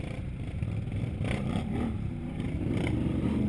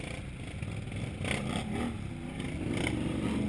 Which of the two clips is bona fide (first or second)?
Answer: second